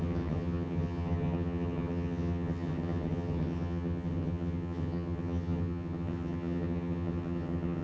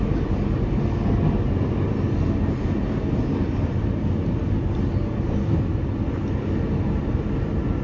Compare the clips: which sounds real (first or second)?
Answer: second